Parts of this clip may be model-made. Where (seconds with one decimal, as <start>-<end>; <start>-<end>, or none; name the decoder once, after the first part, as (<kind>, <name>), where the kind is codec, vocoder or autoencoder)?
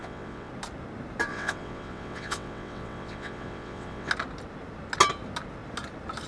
0.0-0.5 (vocoder, WaveNeXt); 1.3-4.1